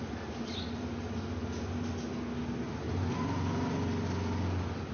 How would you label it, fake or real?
real